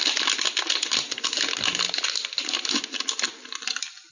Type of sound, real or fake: real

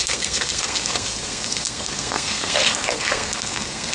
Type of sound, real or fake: fake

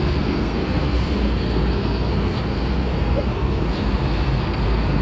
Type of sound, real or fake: fake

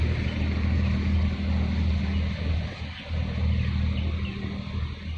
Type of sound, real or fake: real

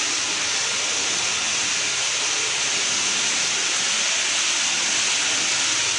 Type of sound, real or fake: real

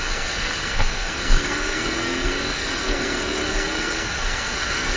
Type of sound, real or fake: fake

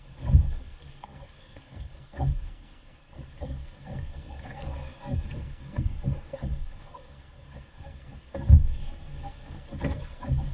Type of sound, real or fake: fake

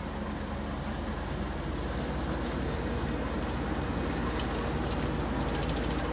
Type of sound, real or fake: real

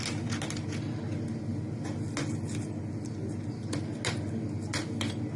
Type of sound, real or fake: real